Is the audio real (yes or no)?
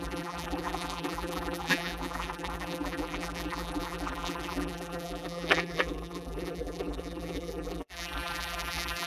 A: no